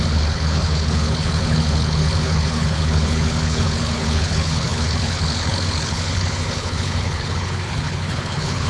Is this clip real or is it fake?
fake